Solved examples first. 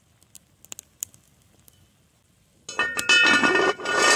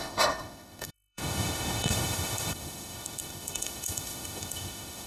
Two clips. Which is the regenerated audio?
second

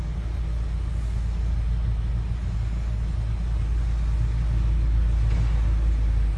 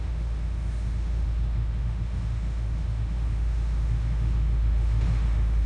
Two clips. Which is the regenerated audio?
second